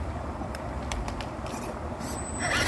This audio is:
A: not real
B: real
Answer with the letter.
A